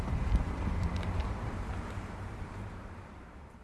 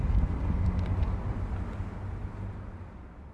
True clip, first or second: second